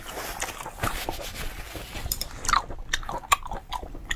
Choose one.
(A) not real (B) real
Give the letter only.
B